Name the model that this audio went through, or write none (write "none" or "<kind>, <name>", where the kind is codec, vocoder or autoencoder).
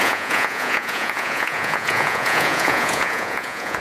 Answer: vocoder, Vocos